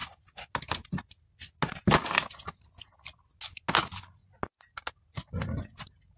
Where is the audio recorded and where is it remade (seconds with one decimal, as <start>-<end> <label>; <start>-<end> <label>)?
0.0-6.2 recorded